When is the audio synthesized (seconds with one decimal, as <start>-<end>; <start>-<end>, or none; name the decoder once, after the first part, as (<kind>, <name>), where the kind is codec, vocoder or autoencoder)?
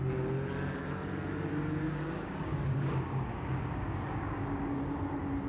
1.5-4.8 (codec, DAC)